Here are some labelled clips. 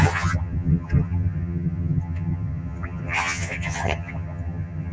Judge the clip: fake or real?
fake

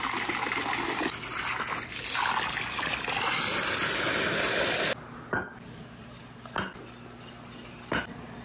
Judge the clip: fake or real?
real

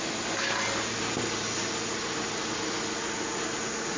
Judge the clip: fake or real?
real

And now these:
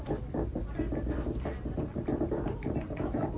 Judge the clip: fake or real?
real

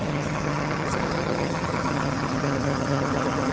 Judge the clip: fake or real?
fake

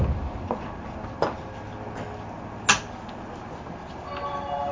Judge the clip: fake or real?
real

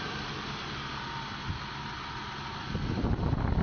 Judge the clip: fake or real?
real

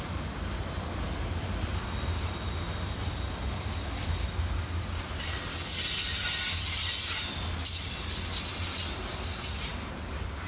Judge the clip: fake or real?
real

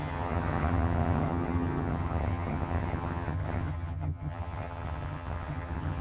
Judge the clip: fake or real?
fake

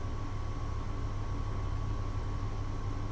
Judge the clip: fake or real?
real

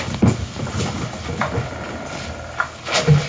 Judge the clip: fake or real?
real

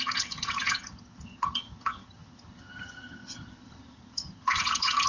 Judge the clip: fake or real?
fake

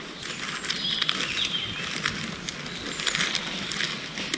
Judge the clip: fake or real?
real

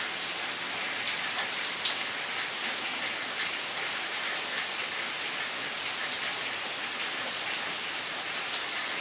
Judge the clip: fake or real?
real